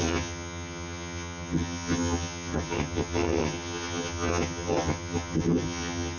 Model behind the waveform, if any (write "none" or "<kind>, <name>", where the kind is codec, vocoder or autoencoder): vocoder, HiFi-GAN